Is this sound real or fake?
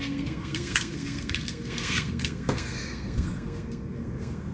fake